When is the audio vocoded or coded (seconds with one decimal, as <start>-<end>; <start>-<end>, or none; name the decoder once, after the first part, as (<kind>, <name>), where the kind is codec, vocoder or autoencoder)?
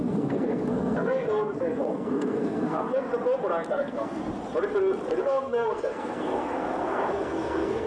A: 0.0-3.1 (codec, SNAC); 3.7-4.2; 5.2-7.9